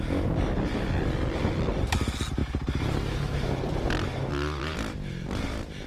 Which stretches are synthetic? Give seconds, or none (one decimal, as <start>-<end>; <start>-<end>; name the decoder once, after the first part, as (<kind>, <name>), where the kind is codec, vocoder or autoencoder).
none